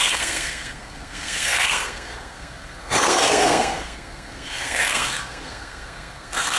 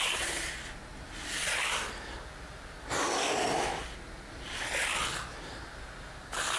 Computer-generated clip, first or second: first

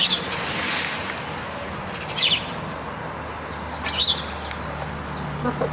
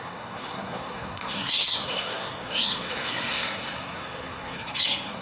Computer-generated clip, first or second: second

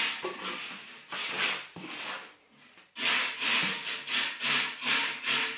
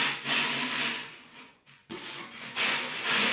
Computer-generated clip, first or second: second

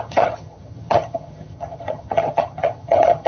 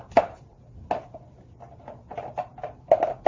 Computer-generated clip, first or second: first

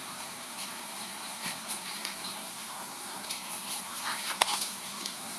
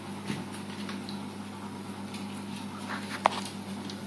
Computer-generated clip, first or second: first